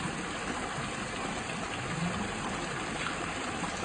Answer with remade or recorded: recorded